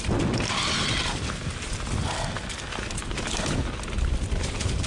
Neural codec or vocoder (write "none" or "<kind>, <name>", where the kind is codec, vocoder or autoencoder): none